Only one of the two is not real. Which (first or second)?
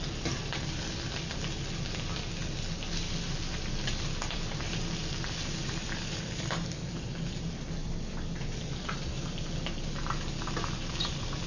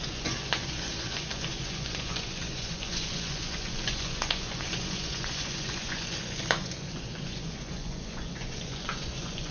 second